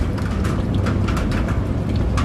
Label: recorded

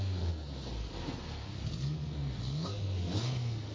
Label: remade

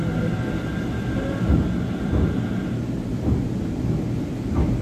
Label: recorded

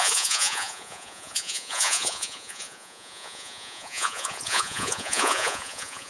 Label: remade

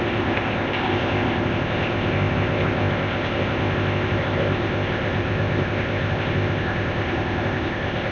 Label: remade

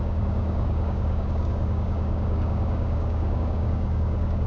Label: remade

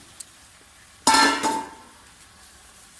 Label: recorded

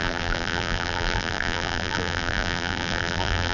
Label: remade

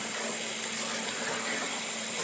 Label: recorded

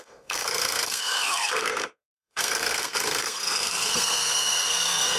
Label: remade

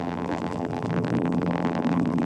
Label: remade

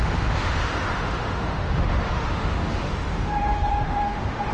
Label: remade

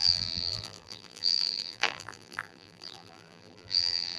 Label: remade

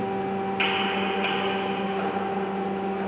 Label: recorded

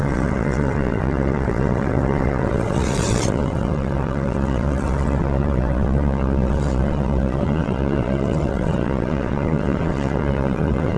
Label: remade